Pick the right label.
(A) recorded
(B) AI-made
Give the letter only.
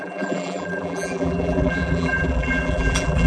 B